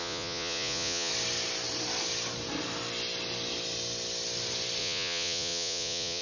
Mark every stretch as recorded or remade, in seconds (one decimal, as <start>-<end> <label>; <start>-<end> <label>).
0.0-1.1 remade; 1.1-4.8 recorded; 4.8-6.2 remade